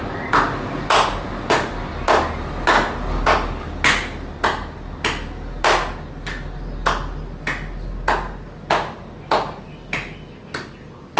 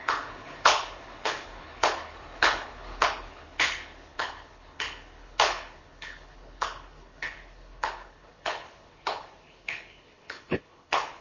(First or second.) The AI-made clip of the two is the second